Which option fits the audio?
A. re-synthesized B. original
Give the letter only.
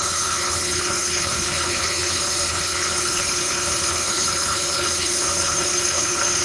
A